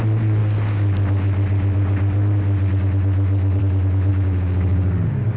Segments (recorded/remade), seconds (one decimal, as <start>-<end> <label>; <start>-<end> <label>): 0.0-4.1 recorded; 4.1-5.4 remade